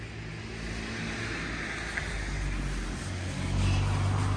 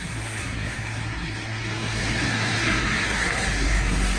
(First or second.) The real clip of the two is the first